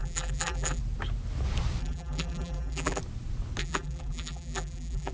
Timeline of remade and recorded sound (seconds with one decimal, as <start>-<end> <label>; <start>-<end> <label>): 0.0-0.8 remade; 0.8-1.8 recorded; 1.8-3.0 remade; 3.0-3.6 recorded; 3.6-5.1 remade